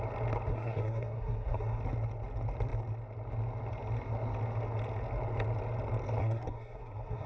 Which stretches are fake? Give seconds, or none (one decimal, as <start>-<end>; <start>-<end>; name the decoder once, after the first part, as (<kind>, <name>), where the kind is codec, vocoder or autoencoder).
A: 0.5-1.8 (codec, SNAC); 6.2-7.3